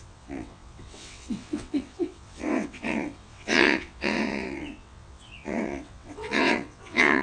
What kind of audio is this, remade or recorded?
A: remade